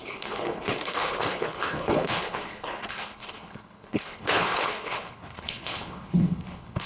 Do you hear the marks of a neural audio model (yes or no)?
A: yes